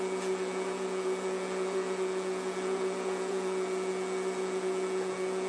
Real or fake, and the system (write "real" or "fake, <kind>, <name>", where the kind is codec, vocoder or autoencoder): fake, vocoder, Vocos